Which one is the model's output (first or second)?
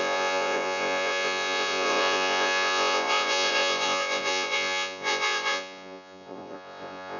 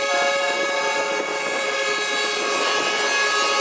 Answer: first